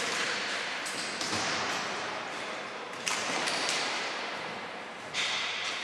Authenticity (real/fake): fake